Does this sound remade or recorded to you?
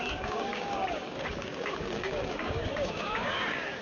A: remade